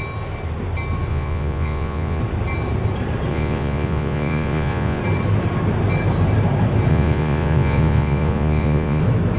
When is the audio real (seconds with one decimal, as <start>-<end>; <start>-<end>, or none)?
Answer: 0.0-1.1; 2.2-3.3; 5.0-6.9; 9.0-9.4

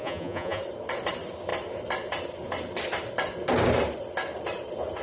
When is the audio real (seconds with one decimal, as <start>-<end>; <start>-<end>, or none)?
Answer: 0.6-5.0

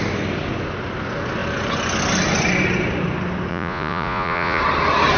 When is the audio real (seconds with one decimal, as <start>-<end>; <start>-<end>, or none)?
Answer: 0.0-3.5; 4.6-5.2

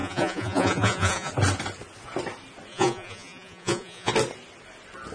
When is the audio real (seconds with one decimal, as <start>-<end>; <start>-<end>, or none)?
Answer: 1.3-2.7; 4.1-5.1

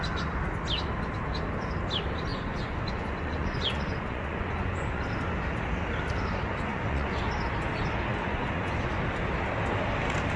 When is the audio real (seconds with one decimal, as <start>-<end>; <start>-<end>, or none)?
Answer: 0.0-2.3; 5.0-6.7; 7.2-8.1; 8.9-10.4

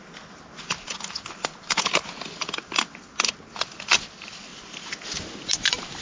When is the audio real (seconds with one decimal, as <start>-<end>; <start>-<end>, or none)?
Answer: 0.0-6.0